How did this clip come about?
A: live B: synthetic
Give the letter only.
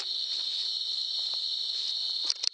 A